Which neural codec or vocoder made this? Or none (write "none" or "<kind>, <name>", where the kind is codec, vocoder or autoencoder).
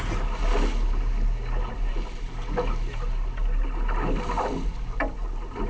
none